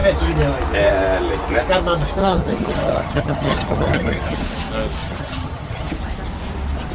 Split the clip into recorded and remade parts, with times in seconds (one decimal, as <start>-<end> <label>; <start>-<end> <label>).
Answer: 0.0-2.2 recorded; 2.2-4.4 remade; 4.4-5.0 recorded; 5.0-5.9 remade; 5.9-6.9 recorded